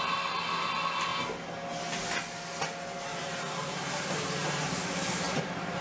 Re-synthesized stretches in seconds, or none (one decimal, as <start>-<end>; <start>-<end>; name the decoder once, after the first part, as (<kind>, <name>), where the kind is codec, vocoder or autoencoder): 3.1-5.8 (vocoder, BigVGAN v2)